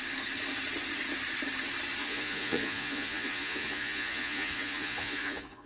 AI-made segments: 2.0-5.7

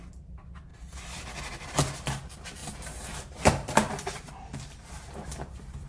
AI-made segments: 2.6-5.9

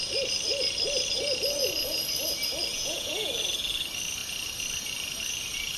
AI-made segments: 2.7-3.3